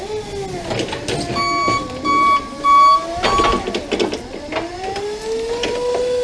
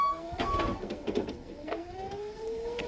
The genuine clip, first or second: first